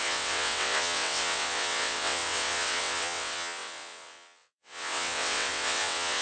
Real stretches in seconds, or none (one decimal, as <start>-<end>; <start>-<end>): none